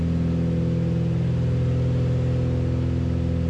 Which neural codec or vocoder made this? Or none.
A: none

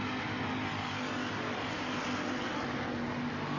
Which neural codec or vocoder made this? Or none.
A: none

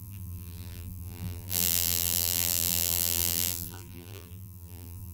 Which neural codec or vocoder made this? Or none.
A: vocoder, BigVGAN v2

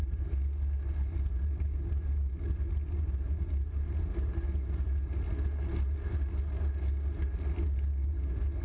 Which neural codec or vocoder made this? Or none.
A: none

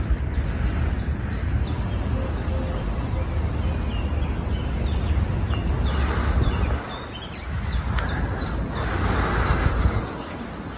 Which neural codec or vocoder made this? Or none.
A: none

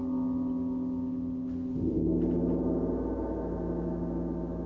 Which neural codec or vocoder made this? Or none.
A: none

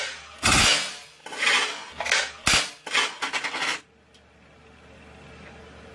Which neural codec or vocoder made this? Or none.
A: none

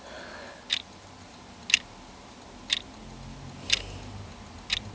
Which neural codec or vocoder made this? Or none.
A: none